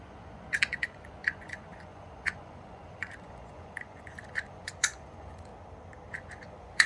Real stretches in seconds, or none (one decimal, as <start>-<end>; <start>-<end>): 5.5-6.1